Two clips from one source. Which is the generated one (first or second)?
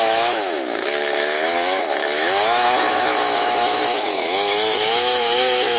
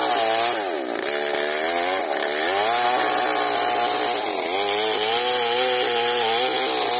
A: first